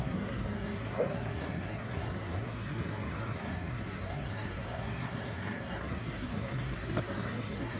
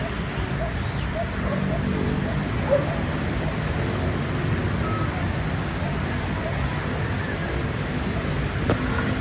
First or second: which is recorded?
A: second